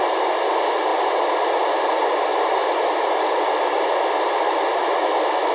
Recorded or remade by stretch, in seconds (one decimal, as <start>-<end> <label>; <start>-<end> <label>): 0.0-5.5 recorded